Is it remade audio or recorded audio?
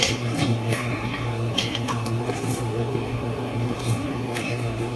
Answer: remade